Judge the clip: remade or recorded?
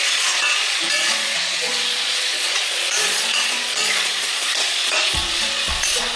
remade